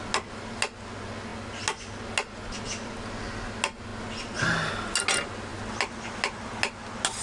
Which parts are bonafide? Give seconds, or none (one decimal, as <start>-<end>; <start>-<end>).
0.0-7.2